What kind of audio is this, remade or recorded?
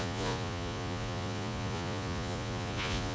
remade